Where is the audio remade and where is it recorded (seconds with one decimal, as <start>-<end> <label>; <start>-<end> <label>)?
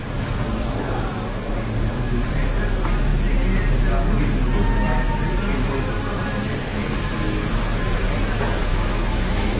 0.0-8.7 recorded; 8.7-9.6 remade